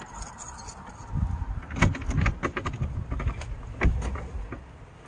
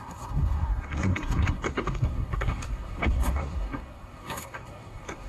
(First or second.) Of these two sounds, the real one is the first